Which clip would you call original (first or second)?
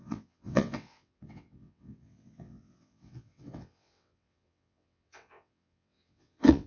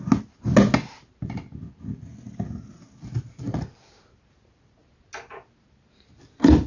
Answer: second